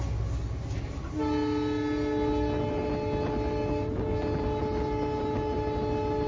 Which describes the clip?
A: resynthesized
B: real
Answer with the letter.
B